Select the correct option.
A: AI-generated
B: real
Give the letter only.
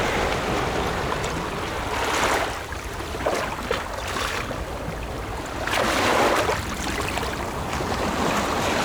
B